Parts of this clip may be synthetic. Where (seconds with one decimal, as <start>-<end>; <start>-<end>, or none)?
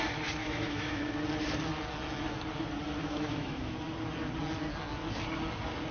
0.4-1.1; 3.0-3.7